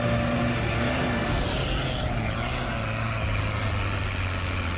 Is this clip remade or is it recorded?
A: recorded